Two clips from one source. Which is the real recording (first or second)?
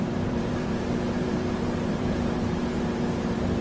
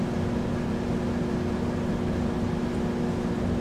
second